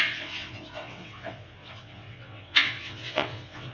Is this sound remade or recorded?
remade